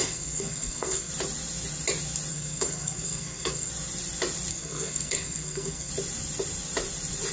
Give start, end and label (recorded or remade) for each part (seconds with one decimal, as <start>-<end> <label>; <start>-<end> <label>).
0.0-1.1 remade; 1.1-2.3 recorded; 2.3-3.7 remade; 3.7-4.5 recorded; 4.5-5.9 remade; 5.9-7.3 recorded